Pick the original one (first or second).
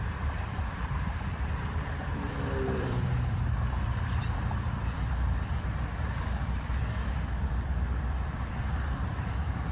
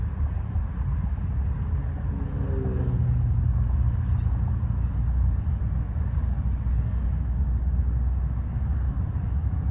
second